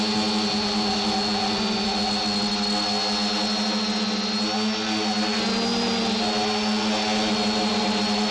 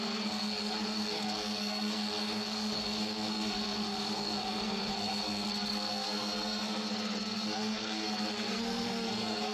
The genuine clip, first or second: first